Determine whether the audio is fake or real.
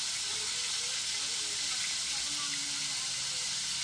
real